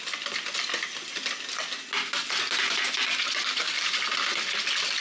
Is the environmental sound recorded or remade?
recorded